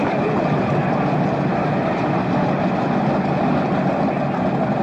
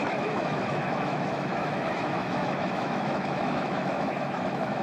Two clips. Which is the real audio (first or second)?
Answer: first